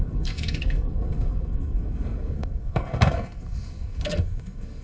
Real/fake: fake